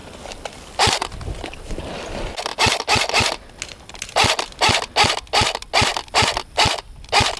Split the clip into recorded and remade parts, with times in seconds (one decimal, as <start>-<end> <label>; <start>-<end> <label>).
0.0-2.1 remade; 2.1-2.5 recorded; 2.5-3.3 remade; 3.3-7.4 recorded